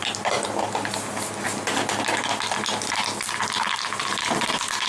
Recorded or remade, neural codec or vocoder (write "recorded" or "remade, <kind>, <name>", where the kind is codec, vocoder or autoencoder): recorded